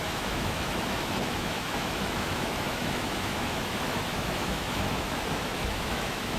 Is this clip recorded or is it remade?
remade